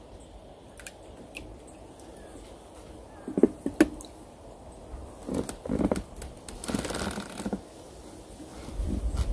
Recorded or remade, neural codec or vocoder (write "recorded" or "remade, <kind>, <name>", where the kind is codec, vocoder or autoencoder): recorded